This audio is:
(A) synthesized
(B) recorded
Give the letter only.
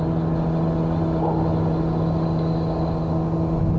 B